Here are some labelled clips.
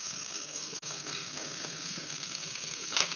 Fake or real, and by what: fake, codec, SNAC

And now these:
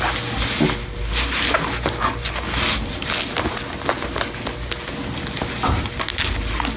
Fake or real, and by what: real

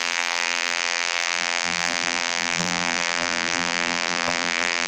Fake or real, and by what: fake, vocoder, BigVGAN v2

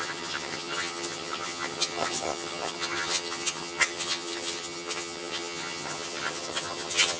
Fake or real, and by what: fake, vocoder, HiFi-GAN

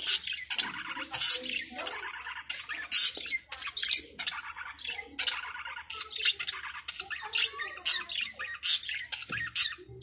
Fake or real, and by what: real